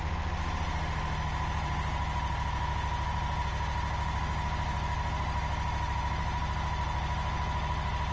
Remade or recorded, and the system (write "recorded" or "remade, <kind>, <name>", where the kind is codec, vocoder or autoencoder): recorded